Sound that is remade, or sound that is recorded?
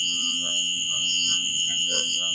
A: remade